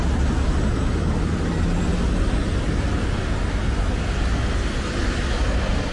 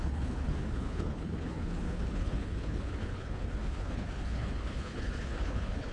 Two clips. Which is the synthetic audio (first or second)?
second